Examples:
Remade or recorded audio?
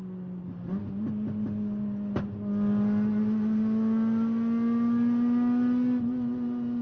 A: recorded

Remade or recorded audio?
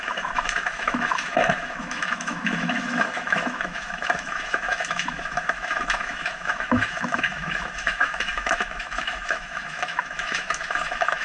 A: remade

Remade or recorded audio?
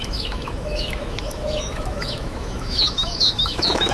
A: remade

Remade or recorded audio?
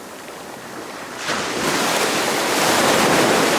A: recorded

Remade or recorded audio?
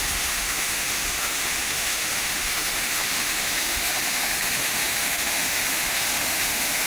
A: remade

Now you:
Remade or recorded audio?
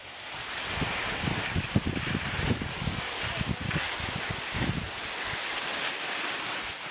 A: recorded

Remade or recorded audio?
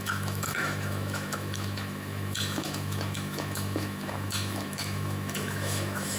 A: remade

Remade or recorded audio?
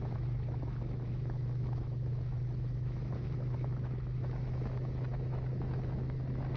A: remade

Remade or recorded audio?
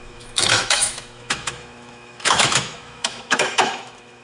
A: remade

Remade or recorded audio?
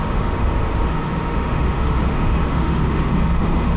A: remade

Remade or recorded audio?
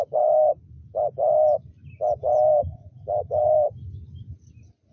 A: recorded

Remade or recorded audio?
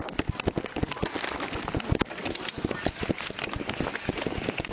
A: recorded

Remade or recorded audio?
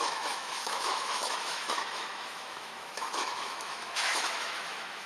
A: remade